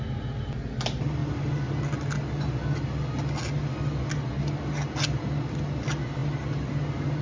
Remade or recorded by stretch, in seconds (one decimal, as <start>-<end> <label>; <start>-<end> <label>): 0.0-7.2 recorded